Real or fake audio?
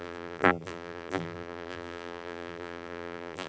fake